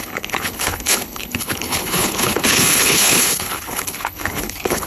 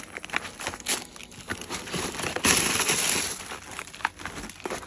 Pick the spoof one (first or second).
first